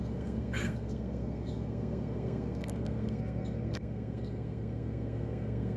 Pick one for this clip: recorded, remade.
remade